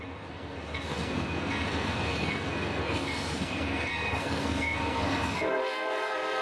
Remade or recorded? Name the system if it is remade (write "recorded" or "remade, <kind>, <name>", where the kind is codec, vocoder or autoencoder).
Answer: remade, codec, SNAC